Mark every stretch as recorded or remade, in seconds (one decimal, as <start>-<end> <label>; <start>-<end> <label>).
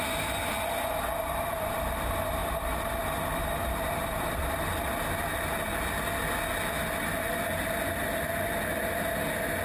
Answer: 0.0-2.4 recorded; 2.4-4.8 remade; 4.8-9.6 recorded